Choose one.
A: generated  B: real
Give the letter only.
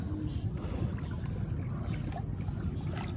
B